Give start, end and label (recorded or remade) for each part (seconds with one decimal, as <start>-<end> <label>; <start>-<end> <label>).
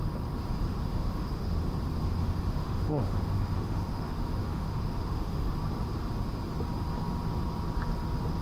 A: 0.0-0.7 recorded; 0.7-1.6 remade; 1.6-2.2 recorded; 2.2-5.5 remade; 5.5-8.4 recorded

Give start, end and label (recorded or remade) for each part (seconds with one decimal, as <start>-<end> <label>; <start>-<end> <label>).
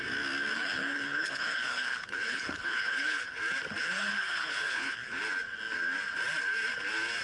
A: 0.0-0.5 recorded; 0.5-3.4 remade; 3.4-3.8 recorded; 3.8-5.2 remade; 5.2-7.2 recorded